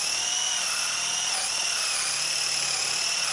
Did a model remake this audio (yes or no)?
no